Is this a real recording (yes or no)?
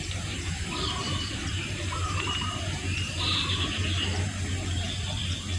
no